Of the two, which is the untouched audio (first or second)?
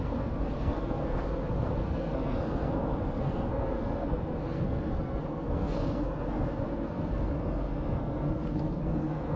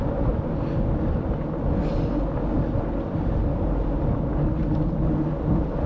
second